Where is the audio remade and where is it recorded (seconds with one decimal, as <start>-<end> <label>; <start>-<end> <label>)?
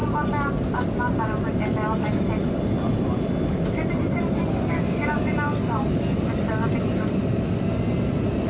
0.0-8.5 recorded